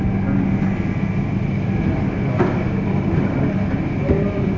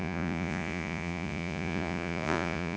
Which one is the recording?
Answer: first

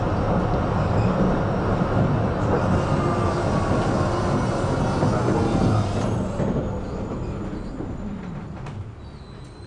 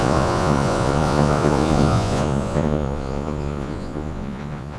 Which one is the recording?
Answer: first